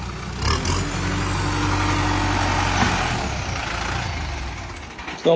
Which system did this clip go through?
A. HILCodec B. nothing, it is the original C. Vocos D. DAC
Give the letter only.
B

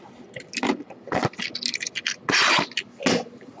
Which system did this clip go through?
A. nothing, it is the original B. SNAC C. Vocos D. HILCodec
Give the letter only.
A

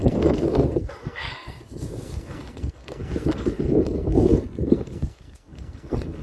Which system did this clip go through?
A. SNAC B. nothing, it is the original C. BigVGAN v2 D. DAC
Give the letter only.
A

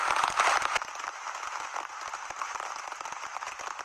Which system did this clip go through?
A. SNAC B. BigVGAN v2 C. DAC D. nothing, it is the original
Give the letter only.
D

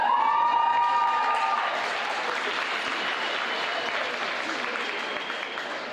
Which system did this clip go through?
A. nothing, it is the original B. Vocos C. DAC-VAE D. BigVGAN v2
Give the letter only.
A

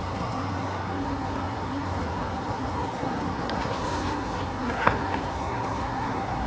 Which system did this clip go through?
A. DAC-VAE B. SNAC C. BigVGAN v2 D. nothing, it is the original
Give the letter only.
B